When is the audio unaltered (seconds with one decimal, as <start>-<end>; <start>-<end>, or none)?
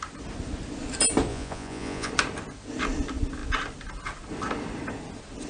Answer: 0.0-1.3; 2.1-5.5